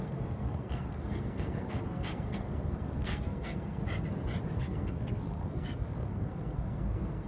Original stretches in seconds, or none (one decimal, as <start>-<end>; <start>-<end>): 3.8-4.6